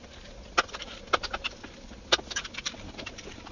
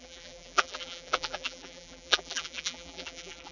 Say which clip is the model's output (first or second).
second